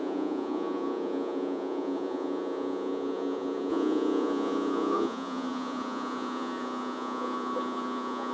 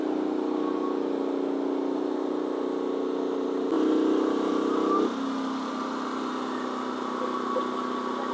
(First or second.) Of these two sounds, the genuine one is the second